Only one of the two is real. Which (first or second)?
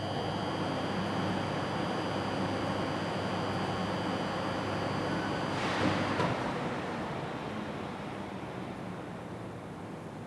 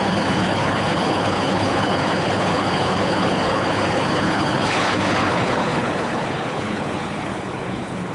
first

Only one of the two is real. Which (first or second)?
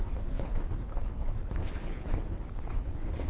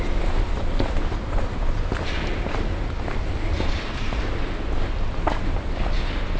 second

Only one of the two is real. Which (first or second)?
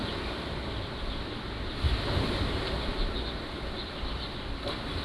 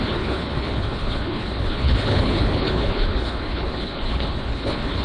first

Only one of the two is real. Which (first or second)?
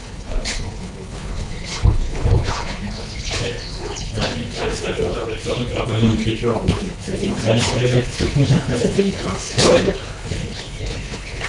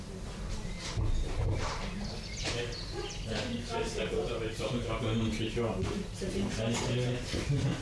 second